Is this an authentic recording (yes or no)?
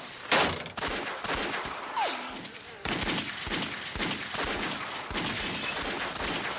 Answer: yes